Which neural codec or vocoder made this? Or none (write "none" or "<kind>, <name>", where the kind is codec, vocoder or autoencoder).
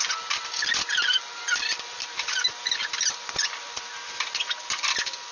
none